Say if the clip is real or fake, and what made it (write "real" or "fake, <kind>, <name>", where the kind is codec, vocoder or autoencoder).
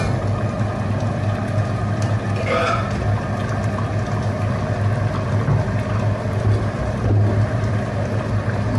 real